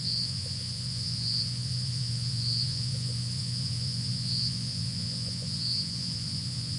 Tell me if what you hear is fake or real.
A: fake